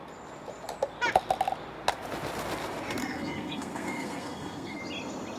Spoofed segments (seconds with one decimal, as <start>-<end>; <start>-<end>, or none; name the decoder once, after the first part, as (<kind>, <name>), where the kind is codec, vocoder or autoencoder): 3.0-4.8 (codec, SNAC)